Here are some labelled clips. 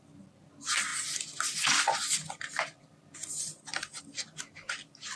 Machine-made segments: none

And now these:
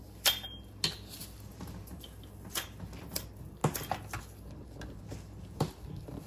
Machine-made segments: none

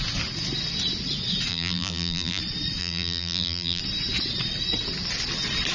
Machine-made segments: 1.5-2.4 (vocoder, BigVGAN v2); 2.8-3.8

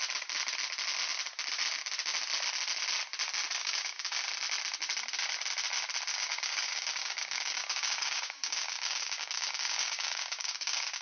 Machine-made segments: 3.6-4.2 (codec, DAC); 6.1-11.0

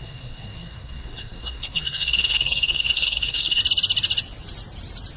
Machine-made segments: 0.0-3.6 (codec, SNAC)

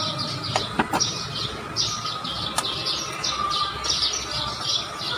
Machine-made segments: 0.0-1.3 (vocoder, BigVGAN v2); 4.4-5.2